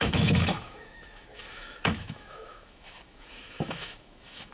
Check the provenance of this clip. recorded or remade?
remade